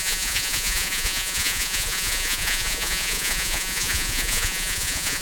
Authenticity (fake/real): fake